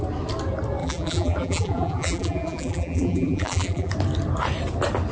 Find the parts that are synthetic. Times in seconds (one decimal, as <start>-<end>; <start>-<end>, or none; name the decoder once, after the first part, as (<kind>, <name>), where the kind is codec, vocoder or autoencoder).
0.8-3.9 (vocoder, BigVGAN v2)